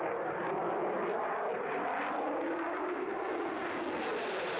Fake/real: real